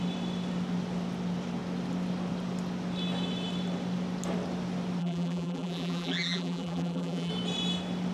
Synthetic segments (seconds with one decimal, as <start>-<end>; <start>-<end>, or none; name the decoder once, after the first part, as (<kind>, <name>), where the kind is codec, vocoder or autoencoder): 5.0-7.3 (vocoder, BigVGAN v2)